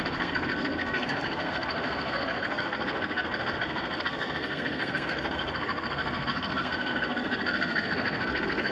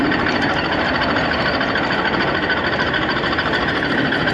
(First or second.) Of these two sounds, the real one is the second